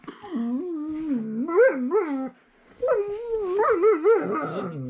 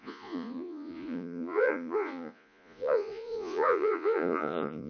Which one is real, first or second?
first